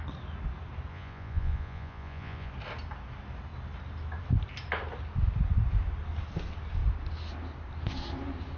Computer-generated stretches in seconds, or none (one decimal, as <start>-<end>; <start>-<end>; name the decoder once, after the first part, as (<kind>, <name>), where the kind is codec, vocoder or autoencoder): 0.9-2.5 (vocoder, Vocos)